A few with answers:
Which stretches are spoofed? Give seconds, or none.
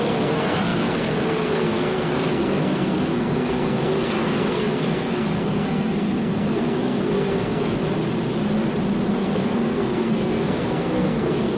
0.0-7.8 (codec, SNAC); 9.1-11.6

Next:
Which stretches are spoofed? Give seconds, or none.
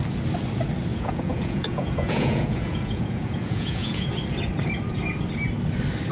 0.9-4.1 (vocoder, Vocos)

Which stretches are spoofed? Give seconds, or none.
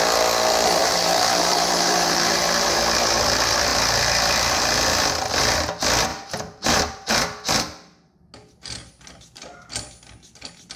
0.8-2.8 (vocoder, BigVGAN v2); 6.1-7.1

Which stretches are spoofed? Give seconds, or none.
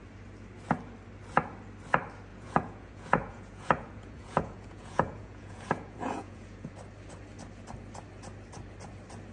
2.3-6.7 (vocoder, Vocos)